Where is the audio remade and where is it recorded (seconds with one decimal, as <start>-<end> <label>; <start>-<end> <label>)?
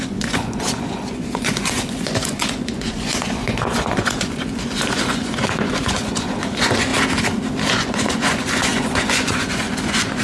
0.0-6.9 remade; 6.9-7.7 recorded; 7.7-10.2 remade